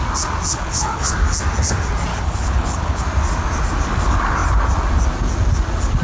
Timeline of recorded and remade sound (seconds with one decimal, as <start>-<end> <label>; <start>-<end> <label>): 0.0-0.5 recorded; 0.5-1.1 remade; 1.1-2.1 recorded; 2.1-3.0 remade; 3.0-6.0 recorded